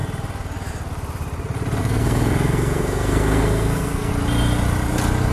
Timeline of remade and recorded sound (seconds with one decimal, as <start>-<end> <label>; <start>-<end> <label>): 0.0-1.8 recorded; 1.8-4.1 remade; 4.1-5.3 recorded